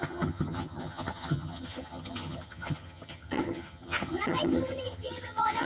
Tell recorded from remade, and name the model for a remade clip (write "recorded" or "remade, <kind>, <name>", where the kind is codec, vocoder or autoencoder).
remade, vocoder, HiFi-GAN